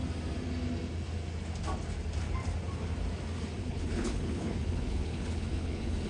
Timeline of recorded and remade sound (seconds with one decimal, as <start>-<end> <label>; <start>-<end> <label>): 0.0-3.6 recorded; 3.6-6.1 remade